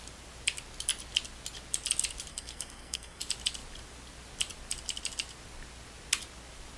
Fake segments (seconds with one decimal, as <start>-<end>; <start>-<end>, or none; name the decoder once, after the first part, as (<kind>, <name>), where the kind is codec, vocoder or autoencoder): 2.3-3.2 (codec, SNAC)